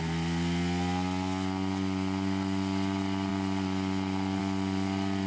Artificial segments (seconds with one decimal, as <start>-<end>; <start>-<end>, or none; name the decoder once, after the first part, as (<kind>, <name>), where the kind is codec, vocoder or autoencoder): none